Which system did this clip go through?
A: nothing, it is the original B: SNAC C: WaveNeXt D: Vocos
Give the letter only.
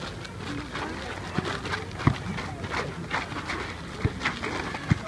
A